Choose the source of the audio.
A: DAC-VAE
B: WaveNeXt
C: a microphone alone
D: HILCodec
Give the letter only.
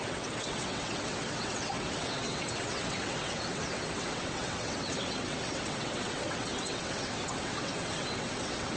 B